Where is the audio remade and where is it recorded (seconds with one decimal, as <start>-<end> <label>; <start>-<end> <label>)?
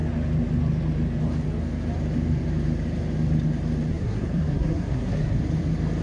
0.0-3.9 recorded; 3.9-5.4 remade; 5.4-6.0 recorded